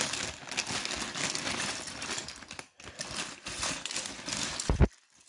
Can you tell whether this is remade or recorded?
recorded